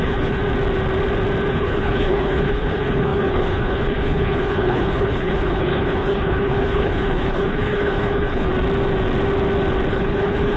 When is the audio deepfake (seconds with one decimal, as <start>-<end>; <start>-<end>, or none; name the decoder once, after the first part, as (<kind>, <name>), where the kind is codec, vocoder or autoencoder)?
0.0-0.4 (codec, HILCodec); 1.5-8.5; 9.9-10.6